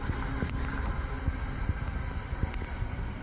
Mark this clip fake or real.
real